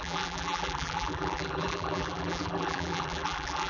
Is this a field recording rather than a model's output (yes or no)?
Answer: no